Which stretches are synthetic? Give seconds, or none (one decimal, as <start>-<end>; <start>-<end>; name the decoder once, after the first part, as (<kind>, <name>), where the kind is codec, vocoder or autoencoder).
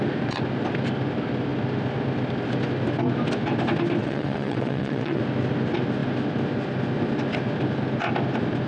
4.0-5.2 (vocoder, WaveNeXt)